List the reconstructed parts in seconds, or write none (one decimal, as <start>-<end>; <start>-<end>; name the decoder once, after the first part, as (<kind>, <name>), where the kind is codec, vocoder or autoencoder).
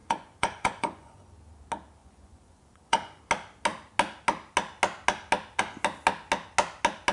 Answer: 0.0-1.4 (vocoder, Vocos); 2.0-3.2